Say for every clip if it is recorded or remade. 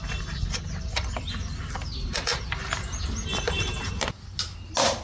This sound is recorded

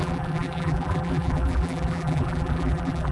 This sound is remade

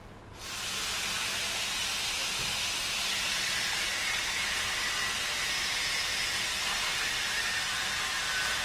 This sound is recorded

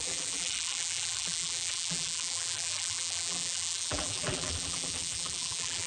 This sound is remade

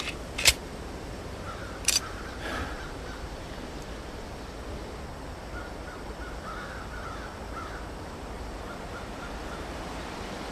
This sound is remade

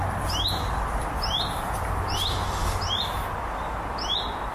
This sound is recorded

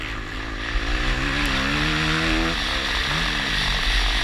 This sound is recorded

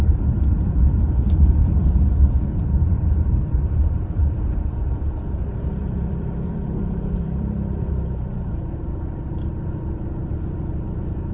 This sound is remade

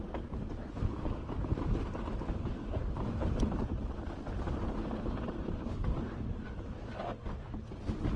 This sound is remade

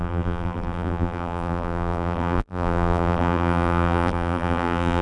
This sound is remade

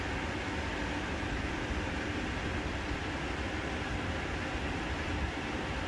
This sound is recorded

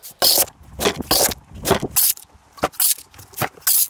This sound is recorded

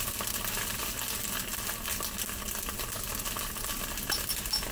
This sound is recorded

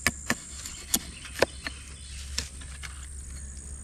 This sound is recorded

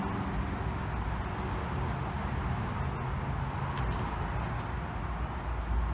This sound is recorded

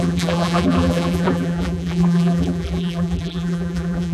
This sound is remade